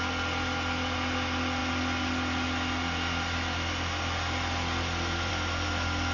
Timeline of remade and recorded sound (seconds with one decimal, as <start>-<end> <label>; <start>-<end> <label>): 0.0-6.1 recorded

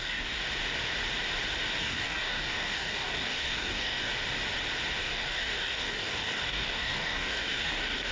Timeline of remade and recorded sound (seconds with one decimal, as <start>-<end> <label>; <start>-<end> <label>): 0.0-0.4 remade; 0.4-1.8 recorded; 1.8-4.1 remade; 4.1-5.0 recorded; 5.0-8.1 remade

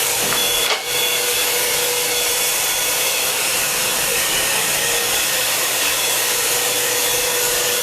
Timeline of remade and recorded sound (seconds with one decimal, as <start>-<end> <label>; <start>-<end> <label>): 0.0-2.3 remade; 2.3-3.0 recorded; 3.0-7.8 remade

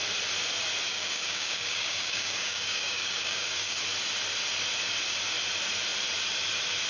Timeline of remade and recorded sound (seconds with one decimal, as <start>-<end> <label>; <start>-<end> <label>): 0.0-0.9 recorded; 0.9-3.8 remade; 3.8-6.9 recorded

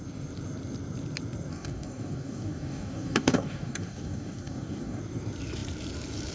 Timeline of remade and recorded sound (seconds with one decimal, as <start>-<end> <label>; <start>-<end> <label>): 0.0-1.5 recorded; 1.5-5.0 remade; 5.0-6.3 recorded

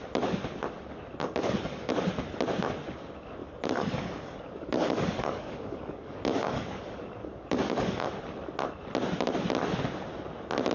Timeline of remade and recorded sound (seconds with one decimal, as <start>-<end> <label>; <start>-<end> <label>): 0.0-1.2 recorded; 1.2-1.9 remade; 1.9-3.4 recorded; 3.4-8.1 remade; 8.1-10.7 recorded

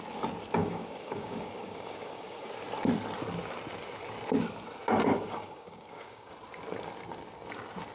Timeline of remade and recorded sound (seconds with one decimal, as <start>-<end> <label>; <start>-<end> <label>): 0.0-0.6 recorded; 0.6-2.5 remade; 2.5-5.1 recorded; 5.1-6.3 remade; 6.3-7.9 recorded

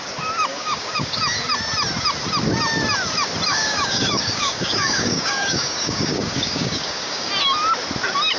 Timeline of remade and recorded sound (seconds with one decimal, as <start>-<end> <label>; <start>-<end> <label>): 0.0-0.5 recorded; 0.5-1.2 remade; 1.2-3.5 recorded; 3.5-7.3 remade; 7.3-8.4 recorded